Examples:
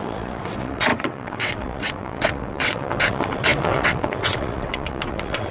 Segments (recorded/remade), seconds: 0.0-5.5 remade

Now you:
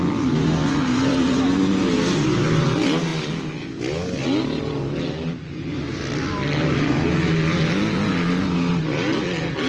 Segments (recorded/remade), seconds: 0.0-9.7 recorded